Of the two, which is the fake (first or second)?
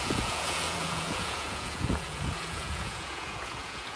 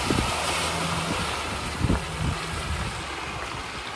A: first